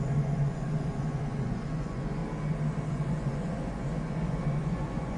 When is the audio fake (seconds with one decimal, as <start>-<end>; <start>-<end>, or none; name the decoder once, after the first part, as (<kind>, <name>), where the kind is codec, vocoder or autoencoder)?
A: 0.0-2.2 (vocoder, Vocos); 2.9-5.2